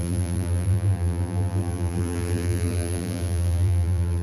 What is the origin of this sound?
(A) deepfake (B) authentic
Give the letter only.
A